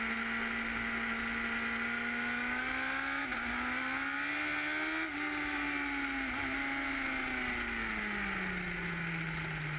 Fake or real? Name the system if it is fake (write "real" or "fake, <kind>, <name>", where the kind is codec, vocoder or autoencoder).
real